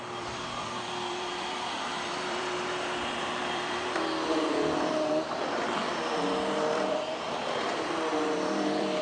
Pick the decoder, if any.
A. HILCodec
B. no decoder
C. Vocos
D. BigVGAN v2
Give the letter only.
D